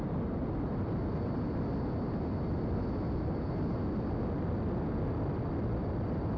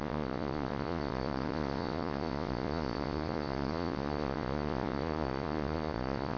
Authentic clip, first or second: first